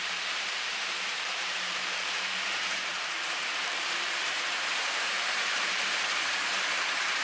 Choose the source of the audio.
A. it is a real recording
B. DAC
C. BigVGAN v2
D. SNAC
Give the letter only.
C